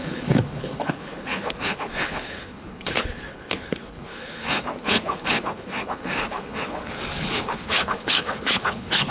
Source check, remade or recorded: remade